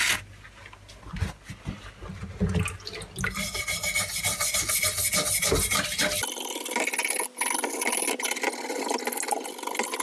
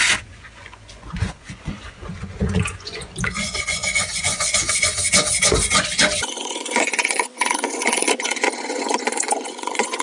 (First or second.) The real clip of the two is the first